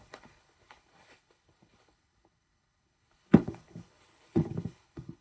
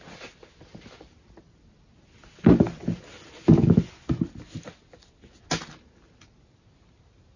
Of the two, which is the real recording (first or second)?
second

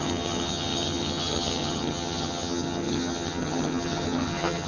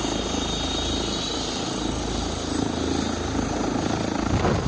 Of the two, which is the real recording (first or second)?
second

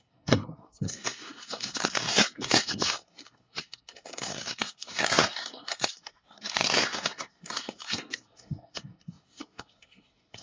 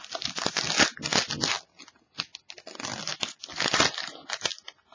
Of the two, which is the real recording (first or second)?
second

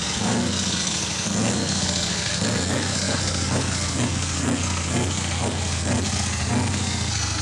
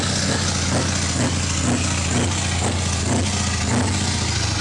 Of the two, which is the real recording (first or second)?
second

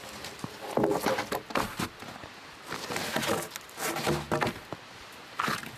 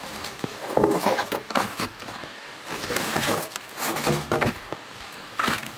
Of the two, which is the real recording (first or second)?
first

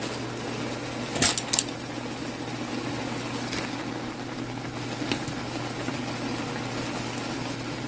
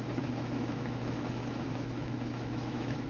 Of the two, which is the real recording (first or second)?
first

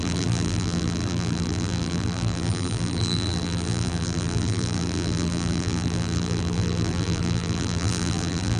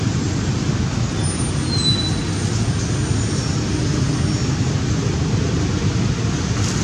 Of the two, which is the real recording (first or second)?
second